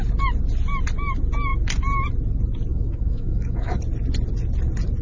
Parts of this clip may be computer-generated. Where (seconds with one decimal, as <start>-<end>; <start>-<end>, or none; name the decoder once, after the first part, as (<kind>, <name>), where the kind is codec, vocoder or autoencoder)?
2.7-3.8 (autoencoder, DAC-VAE)